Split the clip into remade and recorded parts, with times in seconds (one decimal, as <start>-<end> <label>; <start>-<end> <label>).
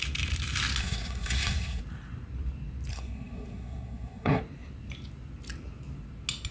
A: 0.0-0.8 recorded; 0.8-1.8 remade; 1.8-2.9 recorded; 2.9-4.4 remade; 4.4-6.5 recorded